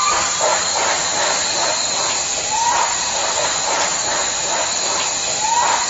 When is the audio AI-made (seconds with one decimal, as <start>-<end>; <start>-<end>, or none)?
0.5-4.0